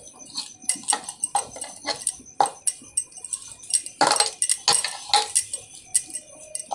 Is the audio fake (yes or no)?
no